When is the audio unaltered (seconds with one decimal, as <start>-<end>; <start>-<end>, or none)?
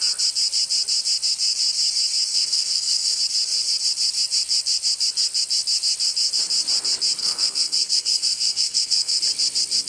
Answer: 0.0-2.3; 3.2-7.2; 9.2-9.9